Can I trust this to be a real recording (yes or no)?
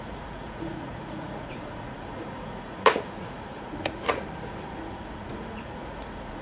no